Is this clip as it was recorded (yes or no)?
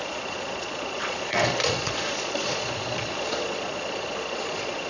no